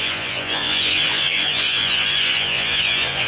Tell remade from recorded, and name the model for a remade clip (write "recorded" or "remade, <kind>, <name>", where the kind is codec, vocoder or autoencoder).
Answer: remade, vocoder, Vocos